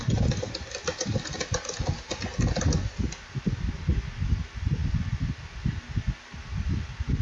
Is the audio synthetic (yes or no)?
no